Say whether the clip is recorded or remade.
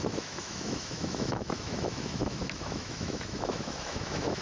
remade